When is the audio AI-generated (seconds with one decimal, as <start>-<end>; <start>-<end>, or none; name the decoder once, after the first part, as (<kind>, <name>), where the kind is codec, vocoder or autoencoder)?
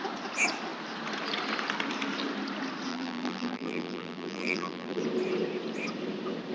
2.9-5.0 (vocoder, BigVGAN v2)